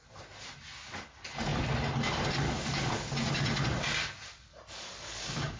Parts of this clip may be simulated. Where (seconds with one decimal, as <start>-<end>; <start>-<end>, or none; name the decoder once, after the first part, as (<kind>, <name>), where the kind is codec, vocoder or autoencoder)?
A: 4.5-5.6 (codec, DAC)